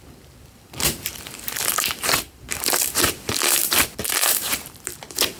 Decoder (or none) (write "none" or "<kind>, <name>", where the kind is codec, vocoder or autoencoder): vocoder, BigVGAN v2